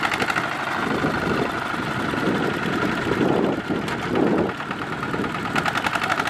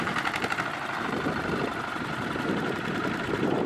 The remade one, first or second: second